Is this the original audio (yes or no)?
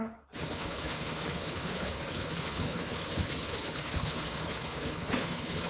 no